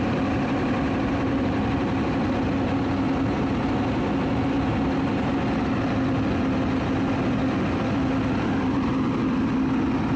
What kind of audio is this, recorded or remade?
recorded